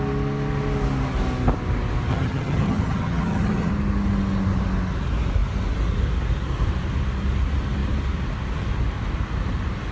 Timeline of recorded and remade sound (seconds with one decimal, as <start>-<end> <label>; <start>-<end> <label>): 0.0-2.1 recorded; 2.1-3.7 remade; 3.7-9.9 recorded